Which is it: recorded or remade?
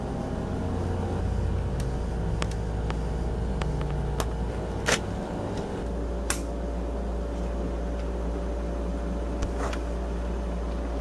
recorded